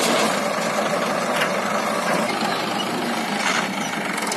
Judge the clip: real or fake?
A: real